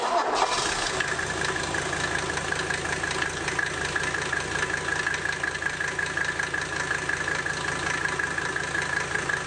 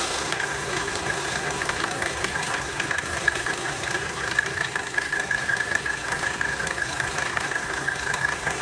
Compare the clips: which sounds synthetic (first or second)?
second